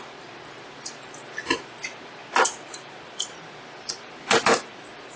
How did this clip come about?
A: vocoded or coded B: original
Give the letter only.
B